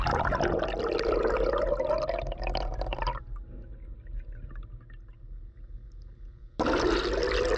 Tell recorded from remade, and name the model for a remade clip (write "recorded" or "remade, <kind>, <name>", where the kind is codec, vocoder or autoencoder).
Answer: recorded